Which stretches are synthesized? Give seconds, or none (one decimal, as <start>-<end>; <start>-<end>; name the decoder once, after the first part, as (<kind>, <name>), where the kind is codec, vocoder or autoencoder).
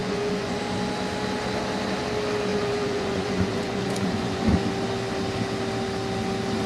0.0-0.6 (vocoder, Vocos); 2.5-4.5